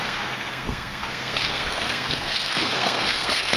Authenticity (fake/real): fake